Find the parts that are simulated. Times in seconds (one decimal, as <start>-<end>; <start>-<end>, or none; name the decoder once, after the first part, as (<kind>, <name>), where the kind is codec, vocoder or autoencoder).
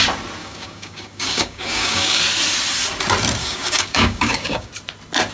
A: 0.4-2.2 (codec, DAC); 3.4-4.7